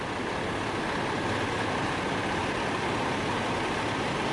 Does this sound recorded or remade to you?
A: recorded